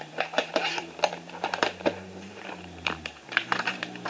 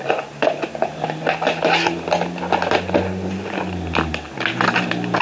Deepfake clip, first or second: first